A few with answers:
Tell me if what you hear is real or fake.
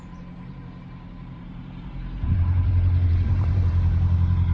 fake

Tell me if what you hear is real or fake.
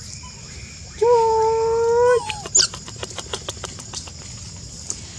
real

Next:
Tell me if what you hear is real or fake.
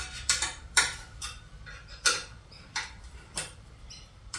fake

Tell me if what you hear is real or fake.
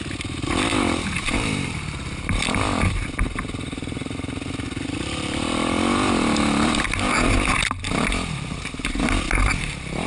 fake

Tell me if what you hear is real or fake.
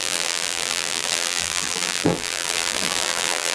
fake